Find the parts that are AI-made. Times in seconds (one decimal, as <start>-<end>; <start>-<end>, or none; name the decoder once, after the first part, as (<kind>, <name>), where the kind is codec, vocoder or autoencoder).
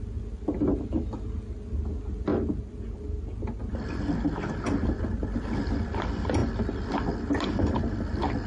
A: none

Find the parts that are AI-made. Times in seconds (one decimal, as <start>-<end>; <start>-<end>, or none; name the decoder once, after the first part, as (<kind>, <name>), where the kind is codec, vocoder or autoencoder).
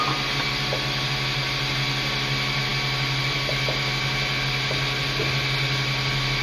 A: none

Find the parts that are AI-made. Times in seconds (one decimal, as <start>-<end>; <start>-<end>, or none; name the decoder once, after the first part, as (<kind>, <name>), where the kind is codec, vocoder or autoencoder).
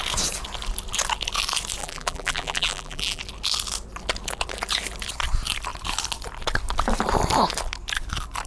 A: 1.8-3.2 (vocoder, BigVGAN v2)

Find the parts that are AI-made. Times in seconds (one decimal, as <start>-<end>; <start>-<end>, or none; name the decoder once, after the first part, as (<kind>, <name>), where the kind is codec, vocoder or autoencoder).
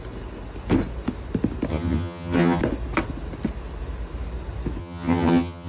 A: 1.7-2.6 (vocoder, HiFi-GAN); 4.8-5.7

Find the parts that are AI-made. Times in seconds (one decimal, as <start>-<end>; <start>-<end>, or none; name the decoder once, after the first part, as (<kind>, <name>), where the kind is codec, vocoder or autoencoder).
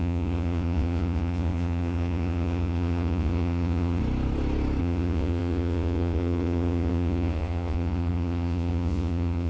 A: 0.0-4.0 (vocoder, Vocos); 4.8-9.5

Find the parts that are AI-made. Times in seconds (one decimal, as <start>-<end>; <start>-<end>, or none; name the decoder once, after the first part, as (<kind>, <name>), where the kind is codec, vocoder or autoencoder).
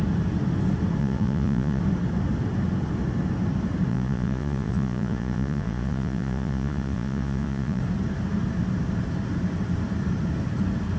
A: 1.0-1.8 (vocoder, Vocos); 3.9-7.8